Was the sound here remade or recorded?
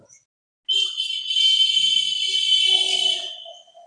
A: recorded